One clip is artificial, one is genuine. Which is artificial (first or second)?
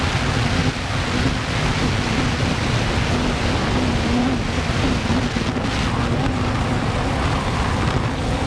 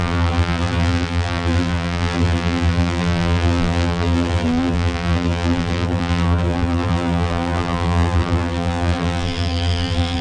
second